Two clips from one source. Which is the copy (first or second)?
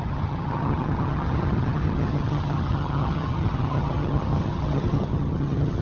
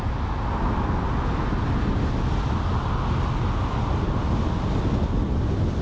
first